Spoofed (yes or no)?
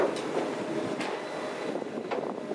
no